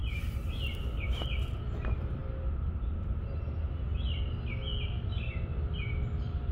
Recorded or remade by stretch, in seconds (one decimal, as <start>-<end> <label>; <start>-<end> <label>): 0.0-1.5 recorded; 1.5-2.2 remade; 2.2-6.0 recorded; 6.0-6.5 remade